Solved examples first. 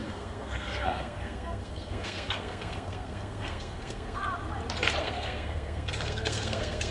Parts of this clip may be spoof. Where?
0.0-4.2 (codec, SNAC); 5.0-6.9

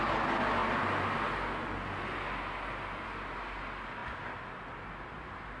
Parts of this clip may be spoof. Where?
none

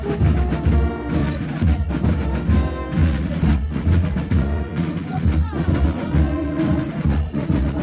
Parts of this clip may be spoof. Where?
1.2-1.9 (vocoder, Vocos); 3.0-7.8

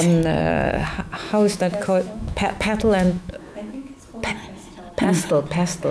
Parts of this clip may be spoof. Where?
0.4-3.9 (autoencoder, DAC-VAE)

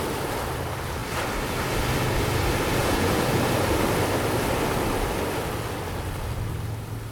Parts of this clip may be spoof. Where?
2.8-3.4 (vocoder, Vocos)

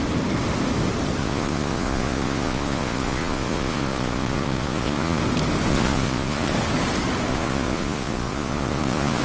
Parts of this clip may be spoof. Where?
1.2-5.2 (vocoder, Vocos); 5.7-6.5; 7.3-9.2

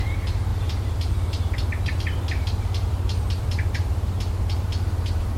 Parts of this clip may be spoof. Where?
0.0-5.4 (vocoder, BigVGAN v2)

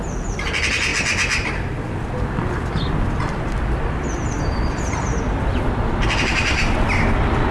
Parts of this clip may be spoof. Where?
none